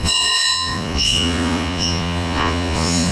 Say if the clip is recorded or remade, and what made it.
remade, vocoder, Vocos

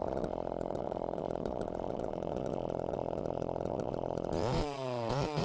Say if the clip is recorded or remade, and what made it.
remade, vocoder, Vocos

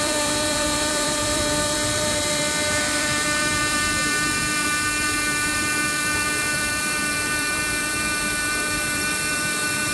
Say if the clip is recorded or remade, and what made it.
remade, vocoder, BigVGAN v2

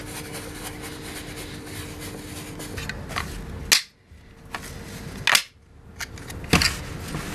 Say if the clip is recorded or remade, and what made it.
recorded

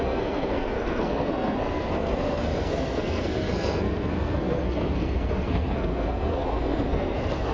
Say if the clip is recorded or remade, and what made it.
remade, codec, SNAC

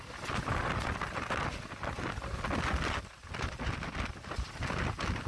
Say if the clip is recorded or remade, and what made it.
recorded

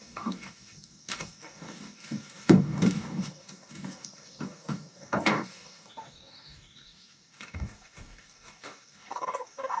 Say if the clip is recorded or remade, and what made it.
remade, codec, DAC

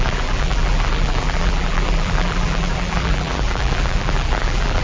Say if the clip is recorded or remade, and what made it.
remade, vocoder, BigVGAN v2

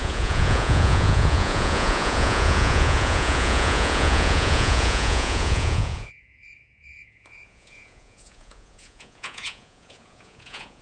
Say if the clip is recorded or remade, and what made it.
remade, vocoder, Vocos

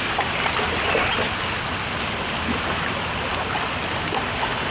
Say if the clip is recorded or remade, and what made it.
recorded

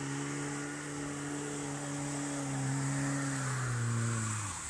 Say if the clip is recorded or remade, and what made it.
recorded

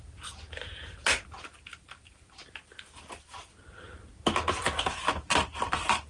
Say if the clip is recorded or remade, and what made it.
recorded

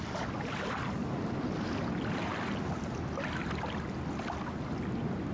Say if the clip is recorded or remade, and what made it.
recorded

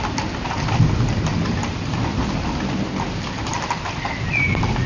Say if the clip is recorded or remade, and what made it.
recorded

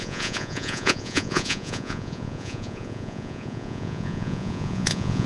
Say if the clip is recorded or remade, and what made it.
remade, vocoder, Vocos